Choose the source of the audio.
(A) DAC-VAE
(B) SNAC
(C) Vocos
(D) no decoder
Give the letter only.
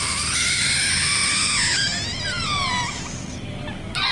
D